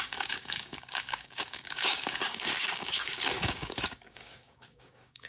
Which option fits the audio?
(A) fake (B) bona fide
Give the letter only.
A